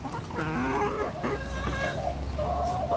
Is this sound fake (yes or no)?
no